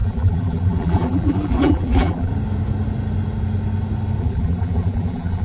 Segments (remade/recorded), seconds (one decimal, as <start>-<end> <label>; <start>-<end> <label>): 0.0-2.3 remade; 2.3-4.2 recorded; 4.2-5.4 remade